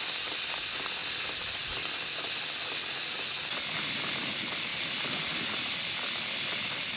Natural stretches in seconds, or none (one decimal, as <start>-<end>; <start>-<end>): 0.0-7.0